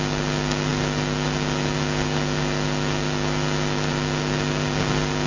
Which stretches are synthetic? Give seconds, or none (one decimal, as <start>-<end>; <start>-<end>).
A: none